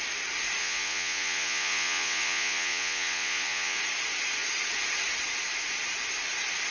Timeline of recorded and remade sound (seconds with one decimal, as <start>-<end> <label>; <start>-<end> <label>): 0.0-0.6 recorded; 0.6-3.8 remade; 3.8-6.7 recorded